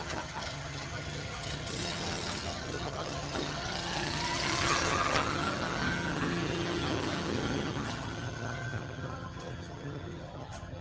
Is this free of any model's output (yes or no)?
no